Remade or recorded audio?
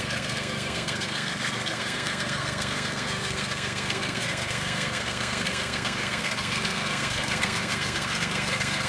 remade